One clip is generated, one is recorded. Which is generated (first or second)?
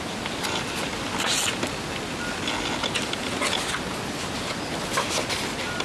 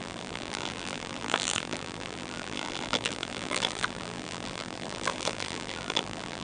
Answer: second